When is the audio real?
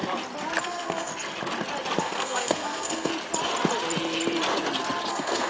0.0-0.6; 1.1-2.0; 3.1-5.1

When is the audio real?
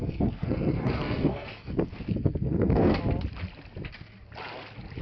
3.0-5.0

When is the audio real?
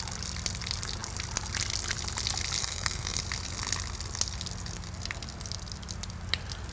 0.0-2.6; 3.2-6.7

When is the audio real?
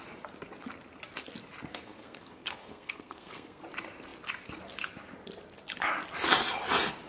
0.0-1.7; 3.6-7.1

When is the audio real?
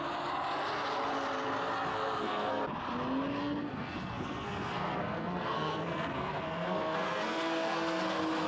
0.0-1.9; 2.6-3.4; 8.0-8.5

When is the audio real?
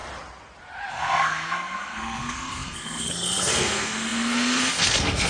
0.0-0.9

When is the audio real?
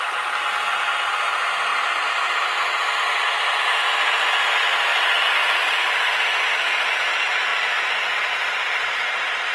0.0-9.5